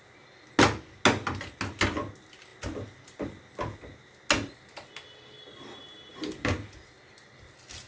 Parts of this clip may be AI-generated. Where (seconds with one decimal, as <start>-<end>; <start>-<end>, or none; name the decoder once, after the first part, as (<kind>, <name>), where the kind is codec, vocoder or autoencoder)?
none